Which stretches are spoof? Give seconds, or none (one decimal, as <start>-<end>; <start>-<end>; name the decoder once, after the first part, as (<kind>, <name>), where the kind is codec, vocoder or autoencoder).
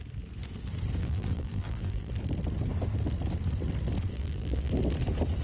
1.0-2.1 (vocoder, BigVGAN v2); 4.1-4.7